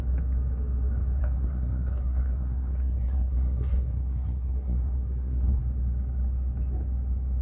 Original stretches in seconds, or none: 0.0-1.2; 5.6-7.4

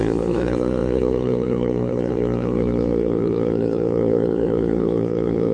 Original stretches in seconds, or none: none

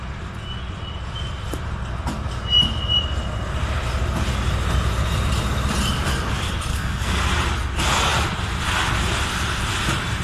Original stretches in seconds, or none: 0.0-6.7; 7.2-10.2

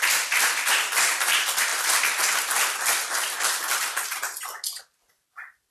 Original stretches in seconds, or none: 0.0-5.7

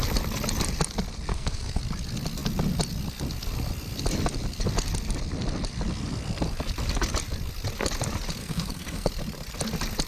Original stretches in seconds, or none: 0.0-1.3; 1.8-8.4; 9.1-10.1